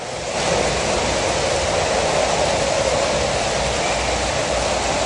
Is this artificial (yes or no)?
no